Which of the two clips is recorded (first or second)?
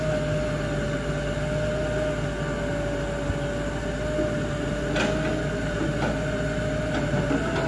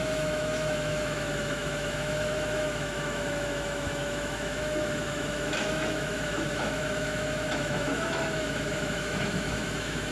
first